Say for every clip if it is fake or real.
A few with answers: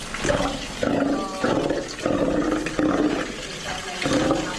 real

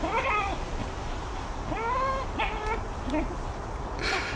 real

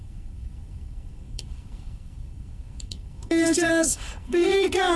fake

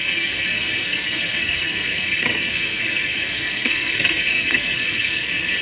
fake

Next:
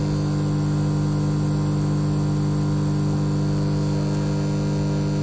real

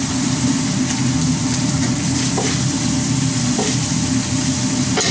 fake